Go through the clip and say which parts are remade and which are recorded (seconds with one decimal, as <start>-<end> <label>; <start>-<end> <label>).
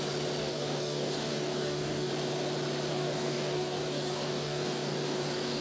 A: 0.0-0.4 recorded; 0.4-2.1 remade; 2.1-2.9 recorded; 2.9-5.6 remade